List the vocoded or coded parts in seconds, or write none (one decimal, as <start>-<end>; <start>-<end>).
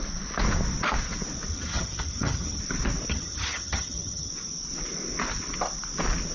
1.5-2.6; 3.1-4.3